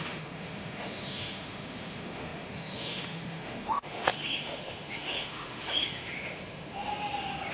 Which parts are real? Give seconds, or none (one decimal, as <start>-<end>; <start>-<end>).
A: 6.9-7.5

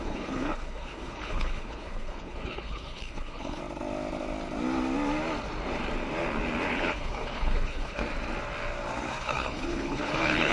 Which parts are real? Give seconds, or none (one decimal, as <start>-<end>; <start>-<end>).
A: 3.6-6.7; 8.0-9.1